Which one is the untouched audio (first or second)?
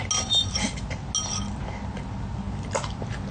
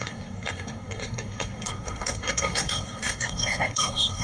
first